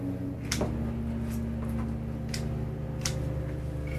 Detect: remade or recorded recorded